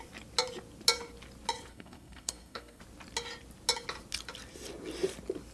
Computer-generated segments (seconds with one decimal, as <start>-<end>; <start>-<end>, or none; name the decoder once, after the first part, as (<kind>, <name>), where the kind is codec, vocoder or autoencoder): 1.7-2.8 (codec, SNAC)